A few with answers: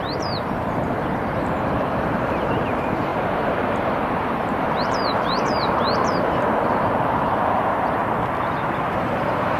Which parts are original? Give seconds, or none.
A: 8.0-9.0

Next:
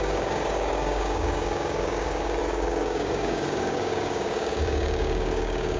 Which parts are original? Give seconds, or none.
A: none

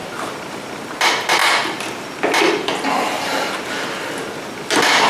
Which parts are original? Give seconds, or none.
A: 0.0-5.1

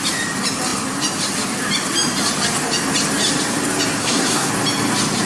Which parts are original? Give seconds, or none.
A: 0.0-4.0; 4.5-5.3

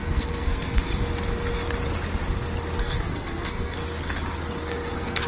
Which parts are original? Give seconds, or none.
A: 0.9-2.8; 3.8-4.7